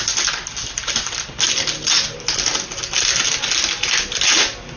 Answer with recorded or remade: recorded